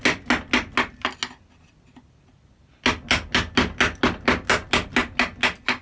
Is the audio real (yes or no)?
yes